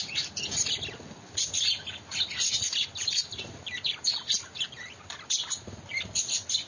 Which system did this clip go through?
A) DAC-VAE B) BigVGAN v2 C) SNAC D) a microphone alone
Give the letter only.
D